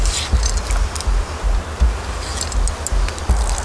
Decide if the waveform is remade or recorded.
recorded